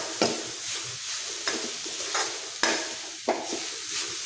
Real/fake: real